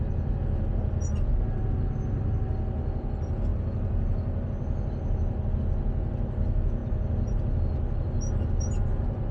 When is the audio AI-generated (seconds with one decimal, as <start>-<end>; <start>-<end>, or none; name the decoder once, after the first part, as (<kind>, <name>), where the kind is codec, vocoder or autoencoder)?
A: none